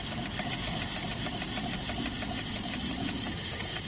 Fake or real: real